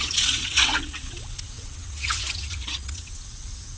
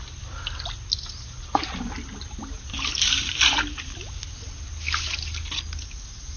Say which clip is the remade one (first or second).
first